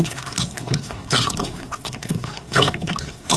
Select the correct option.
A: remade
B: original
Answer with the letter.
A